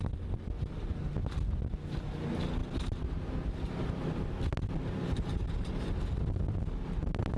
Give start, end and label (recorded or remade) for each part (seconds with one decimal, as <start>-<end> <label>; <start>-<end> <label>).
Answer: 0.0-7.4 recorded